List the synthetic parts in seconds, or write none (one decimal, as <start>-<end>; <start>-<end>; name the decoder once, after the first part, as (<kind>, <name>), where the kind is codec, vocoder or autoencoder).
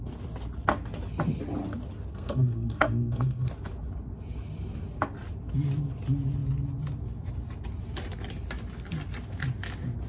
2.1-3.5 (codec, SNAC)